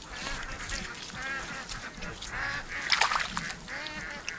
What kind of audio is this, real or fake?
real